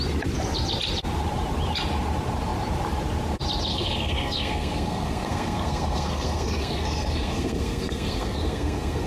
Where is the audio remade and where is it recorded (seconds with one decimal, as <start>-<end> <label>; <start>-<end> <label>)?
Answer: 0.0-3.7 recorded; 3.7-9.1 remade